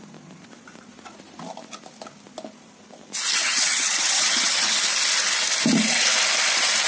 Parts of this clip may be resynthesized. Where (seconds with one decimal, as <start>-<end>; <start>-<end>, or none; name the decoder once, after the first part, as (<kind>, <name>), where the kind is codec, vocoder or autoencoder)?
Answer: 3.4-4.8 (vocoder, HiFi-GAN)